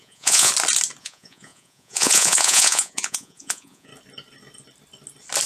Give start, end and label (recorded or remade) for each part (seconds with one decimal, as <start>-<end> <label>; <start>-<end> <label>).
0.0-0.5 remade; 0.5-1.0 recorded; 1.0-3.9 remade; 3.9-5.5 recorded